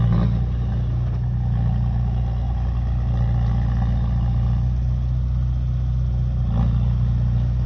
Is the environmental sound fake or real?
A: real